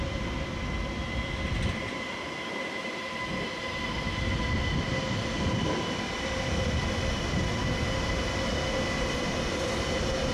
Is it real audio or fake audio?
real